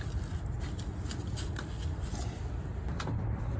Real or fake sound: real